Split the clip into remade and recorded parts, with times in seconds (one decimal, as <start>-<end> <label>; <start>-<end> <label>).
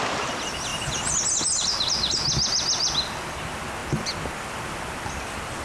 0.0-5.6 recorded